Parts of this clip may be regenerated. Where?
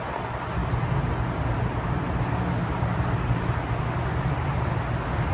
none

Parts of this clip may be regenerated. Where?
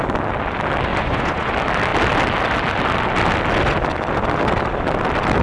0.9-1.5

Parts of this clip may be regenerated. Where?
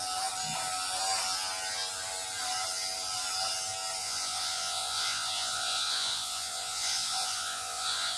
4.0-8.2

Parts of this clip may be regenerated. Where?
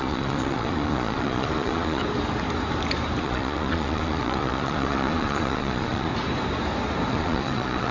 0.0-2.0; 3.2-6.1; 7.1-7.9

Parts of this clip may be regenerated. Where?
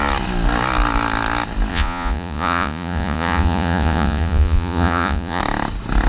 1.7-5.4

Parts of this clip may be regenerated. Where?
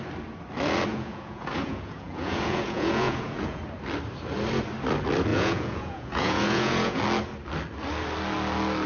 0.9-3.6; 5.3-7.0